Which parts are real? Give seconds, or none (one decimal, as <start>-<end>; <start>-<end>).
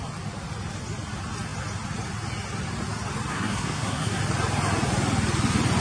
0.0-3.3; 4.2-5.8